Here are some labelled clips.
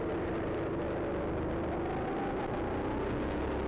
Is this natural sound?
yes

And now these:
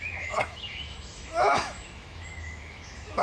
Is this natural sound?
no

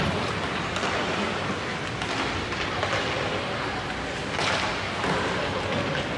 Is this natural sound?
yes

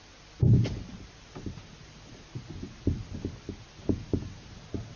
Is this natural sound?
yes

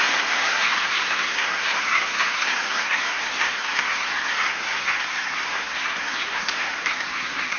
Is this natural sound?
no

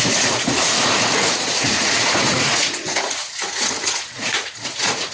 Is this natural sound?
no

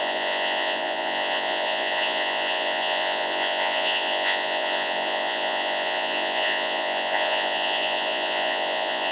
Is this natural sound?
no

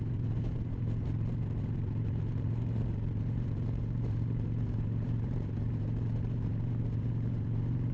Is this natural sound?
no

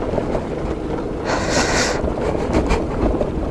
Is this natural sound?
yes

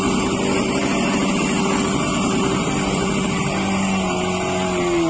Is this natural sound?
yes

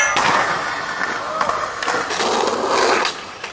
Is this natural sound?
yes